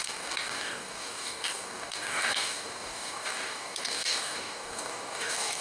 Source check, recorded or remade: remade